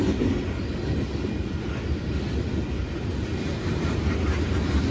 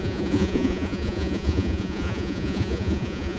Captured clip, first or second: first